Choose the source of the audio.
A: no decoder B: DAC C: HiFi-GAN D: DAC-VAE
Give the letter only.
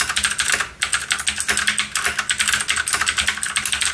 A